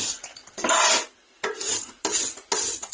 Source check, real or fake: real